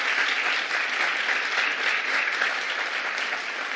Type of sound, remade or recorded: recorded